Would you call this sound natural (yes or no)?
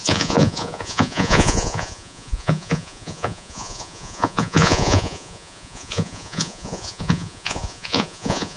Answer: no